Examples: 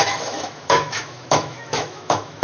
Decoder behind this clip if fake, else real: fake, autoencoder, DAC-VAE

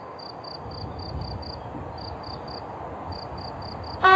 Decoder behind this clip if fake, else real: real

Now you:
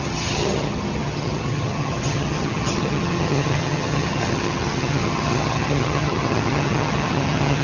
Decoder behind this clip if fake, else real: fake, vocoder, HiFi-GAN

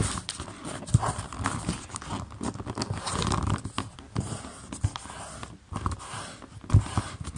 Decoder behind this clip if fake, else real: real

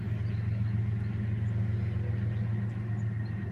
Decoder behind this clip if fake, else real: real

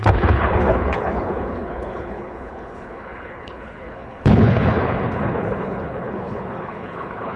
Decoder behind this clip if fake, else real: fake, codec, HILCodec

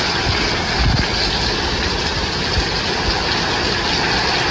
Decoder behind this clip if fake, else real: real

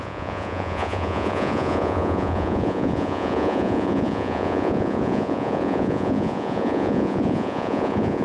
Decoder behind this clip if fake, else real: fake, vocoder, Vocos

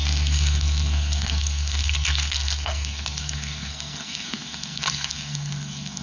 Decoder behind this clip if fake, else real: fake, codec, SNAC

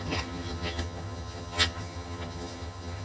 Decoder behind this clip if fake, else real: fake, vocoder, HiFi-GAN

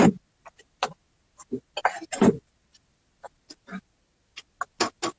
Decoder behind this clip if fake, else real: real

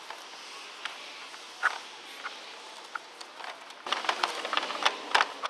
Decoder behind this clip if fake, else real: real